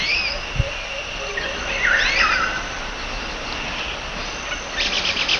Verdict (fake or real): real